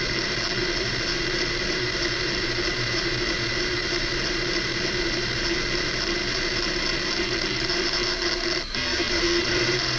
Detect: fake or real fake